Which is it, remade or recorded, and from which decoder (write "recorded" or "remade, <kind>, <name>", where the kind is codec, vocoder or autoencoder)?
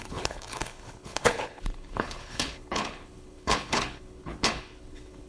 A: remade, codec, HILCodec